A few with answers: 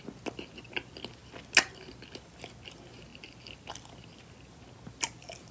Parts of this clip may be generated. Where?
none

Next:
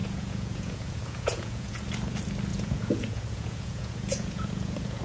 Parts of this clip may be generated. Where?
0.0-1.8 (vocoder, Vocos); 2.5-5.0

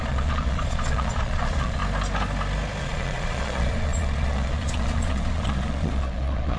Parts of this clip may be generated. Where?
0.0-1.8 (vocoder, Vocos); 2.8-6.6

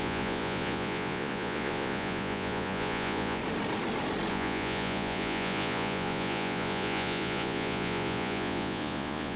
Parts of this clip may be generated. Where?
0.0-3.4 (vocoder, Vocos); 4.3-9.4

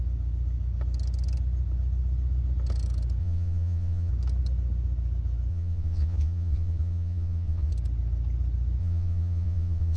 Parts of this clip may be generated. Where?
3.2-4.1 (vocoder, Vocos); 5.5-7.7; 8.8-10.0

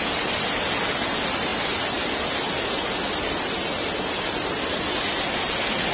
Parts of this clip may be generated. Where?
none